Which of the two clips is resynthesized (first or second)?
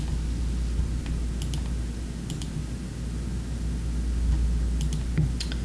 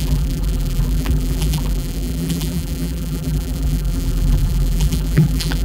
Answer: second